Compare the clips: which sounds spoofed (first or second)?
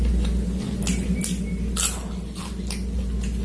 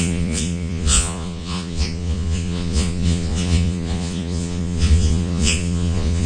second